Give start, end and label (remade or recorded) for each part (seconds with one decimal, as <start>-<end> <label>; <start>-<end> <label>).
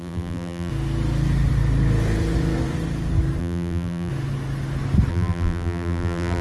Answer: 0.0-0.7 remade; 0.7-3.4 recorded; 3.4-4.1 remade; 4.1-5.1 recorded; 5.1-6.4 remade